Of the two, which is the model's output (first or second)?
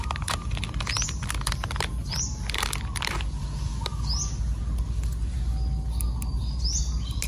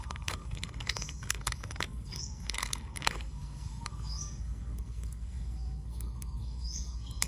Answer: second